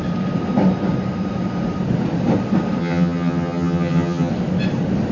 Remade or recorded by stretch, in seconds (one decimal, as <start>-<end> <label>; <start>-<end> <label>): 0.0-2.8 recorded; 2.8-4.3 remade; 4.3-5.1 recorded